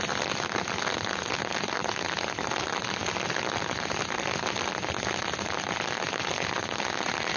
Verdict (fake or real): real